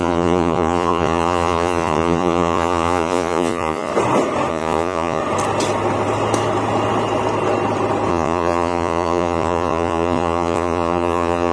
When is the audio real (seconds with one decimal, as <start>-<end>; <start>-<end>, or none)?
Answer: 3.9-4.5; 5.2-8.1